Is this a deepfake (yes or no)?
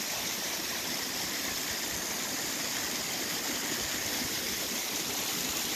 yes